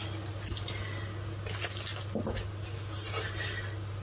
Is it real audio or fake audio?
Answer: real